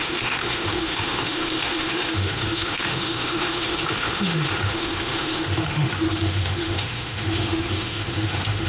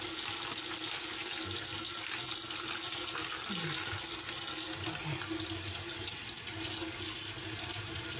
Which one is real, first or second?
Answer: second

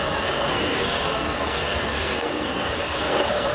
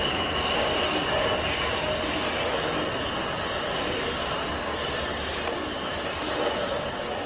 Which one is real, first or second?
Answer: second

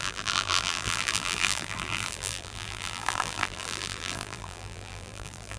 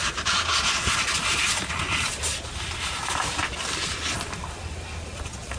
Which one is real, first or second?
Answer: second